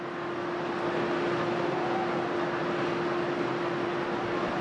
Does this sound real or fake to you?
real